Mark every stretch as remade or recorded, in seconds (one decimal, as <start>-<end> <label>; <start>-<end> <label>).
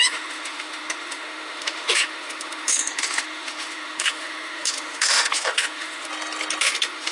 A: 0.0-6.1 remade; 6.1-6.6 recorded; 6.6-7.1 remade